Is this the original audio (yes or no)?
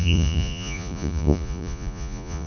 no